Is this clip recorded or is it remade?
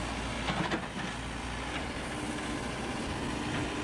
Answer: recorded